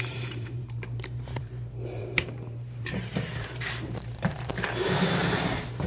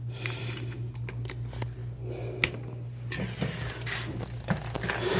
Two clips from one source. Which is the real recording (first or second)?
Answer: second